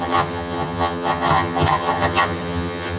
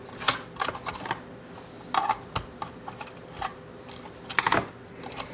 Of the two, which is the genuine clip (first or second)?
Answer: second